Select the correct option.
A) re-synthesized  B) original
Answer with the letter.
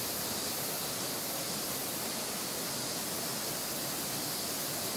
B